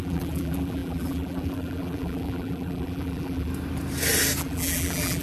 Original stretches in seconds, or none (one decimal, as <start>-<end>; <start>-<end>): 3.5-4.4